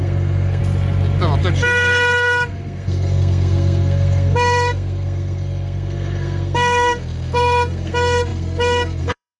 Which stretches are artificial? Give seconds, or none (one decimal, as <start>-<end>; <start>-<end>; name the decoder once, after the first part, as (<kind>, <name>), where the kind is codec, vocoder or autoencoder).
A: 0.0-0.6 (codec, SNAC); 1.4-9.4